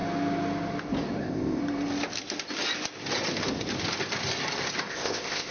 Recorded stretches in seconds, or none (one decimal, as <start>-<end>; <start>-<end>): 0.0-1.2; 1.6-4.9